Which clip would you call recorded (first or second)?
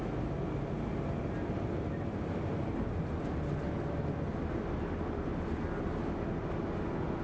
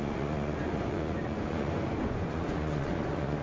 first